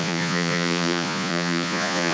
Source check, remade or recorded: remade